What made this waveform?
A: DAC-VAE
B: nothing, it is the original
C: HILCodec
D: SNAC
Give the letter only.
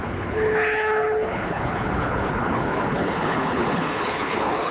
C